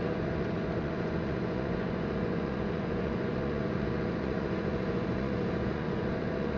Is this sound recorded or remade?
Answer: remade